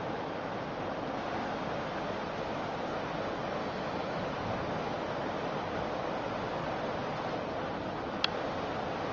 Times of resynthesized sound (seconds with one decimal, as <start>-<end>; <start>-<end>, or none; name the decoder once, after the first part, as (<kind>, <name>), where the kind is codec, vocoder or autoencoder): 3.6-4.2 (autoencoder, DAC-VAE)